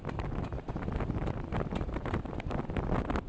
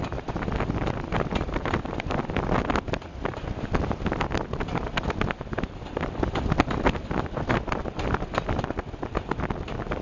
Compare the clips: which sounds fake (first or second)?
first